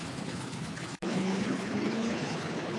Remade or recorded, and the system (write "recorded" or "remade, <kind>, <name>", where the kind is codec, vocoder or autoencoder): remade, codec, HILCodec